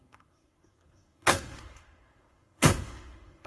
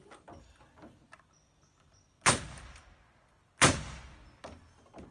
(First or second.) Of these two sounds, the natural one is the second